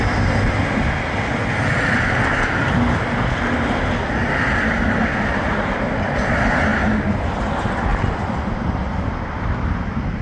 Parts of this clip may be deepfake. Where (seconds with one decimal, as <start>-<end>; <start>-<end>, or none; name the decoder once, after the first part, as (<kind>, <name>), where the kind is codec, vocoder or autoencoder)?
4.2-5.1 (vocoder, BigVGAN v2); 7.9-10.2